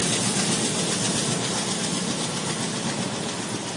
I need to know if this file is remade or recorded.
recorded